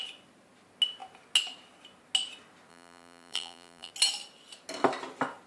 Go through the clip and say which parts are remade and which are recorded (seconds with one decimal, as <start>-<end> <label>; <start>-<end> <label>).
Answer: 0.0-2.7 recorded; 2.7-3.9 remade; 3.9-5.5 recorded